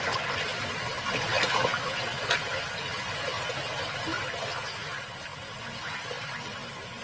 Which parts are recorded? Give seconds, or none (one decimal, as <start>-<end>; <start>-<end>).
0.0-7.0